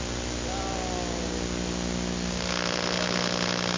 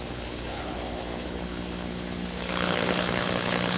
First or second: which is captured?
first